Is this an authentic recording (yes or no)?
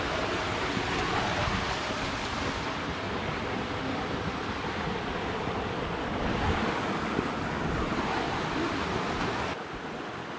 yes